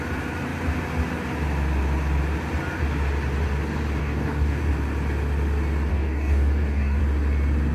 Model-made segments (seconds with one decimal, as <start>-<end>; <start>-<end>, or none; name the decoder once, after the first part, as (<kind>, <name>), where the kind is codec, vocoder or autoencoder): 4.0-4.6 (codec, DAC); 5.9-7.0